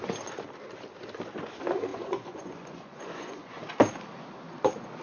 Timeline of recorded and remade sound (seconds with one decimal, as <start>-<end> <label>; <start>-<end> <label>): 0.0-1.9 recorded; 1.9-3.6 remade; 3.6-5.0 recorded